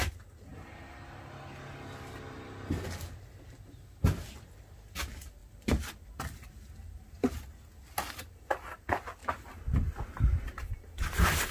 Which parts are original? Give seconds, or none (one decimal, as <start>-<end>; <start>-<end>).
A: 0.0-5.4; 7.1-9.2; 10.7-11.5